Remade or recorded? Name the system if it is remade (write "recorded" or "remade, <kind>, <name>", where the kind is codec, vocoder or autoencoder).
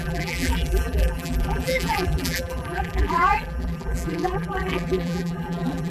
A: remade, vocoder, BigVGAN v2